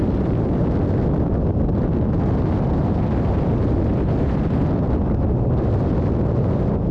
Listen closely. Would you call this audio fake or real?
real